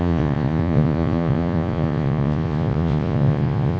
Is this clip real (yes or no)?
no